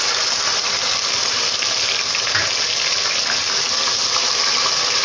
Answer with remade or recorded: recorded